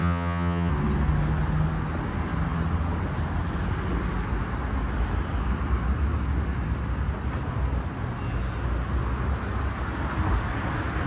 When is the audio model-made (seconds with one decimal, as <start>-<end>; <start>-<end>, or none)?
0.0-0.7